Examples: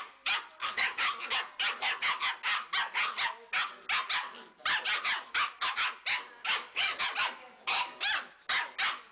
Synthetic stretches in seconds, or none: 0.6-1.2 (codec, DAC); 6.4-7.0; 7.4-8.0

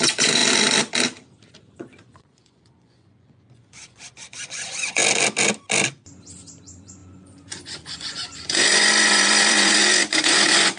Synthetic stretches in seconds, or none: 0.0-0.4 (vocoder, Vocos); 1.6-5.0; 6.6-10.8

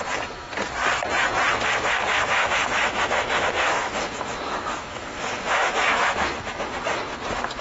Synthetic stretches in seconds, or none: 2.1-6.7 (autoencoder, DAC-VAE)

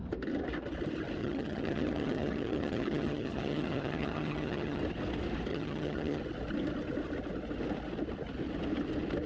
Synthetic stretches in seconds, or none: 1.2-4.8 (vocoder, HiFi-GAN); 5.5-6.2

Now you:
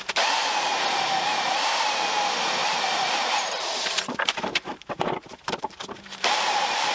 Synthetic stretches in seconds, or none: 2.6-6.9 (vocoder, BigVGAN v2)

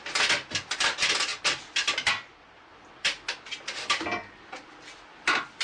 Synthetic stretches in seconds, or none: none